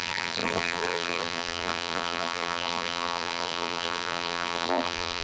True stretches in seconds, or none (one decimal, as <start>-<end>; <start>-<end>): none